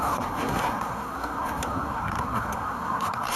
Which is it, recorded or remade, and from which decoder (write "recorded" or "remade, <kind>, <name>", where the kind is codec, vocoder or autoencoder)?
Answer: remade, codec, SNAC